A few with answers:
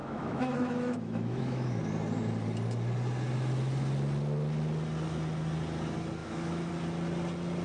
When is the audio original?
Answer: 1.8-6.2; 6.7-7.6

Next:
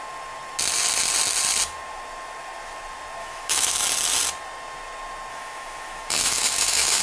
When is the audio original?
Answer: 0.0-3.2; 3.8-5.3

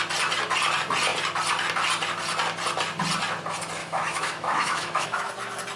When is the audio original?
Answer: 0.0-3.8; 5.3-5.8

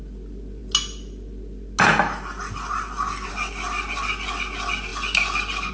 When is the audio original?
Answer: 0.0-5.7

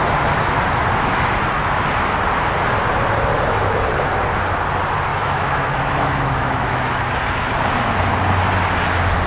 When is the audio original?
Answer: 0.0-5.1; 7.0-9.3

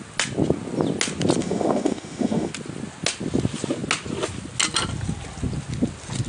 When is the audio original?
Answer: 0.0-1.4; 2.5-6.3

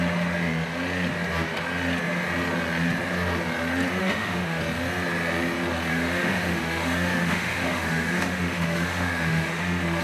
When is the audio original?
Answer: 0.0-4.0; 4.6-5.9